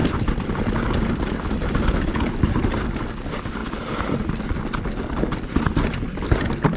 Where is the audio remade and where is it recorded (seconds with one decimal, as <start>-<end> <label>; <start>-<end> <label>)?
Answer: 0.0-6.8 recorded